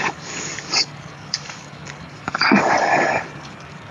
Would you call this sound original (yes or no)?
no